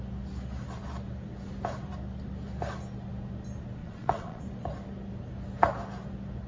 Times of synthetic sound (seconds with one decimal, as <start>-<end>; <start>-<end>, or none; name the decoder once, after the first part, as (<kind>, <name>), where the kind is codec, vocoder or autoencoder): 3.8-4.4 (vocoder, Vocos)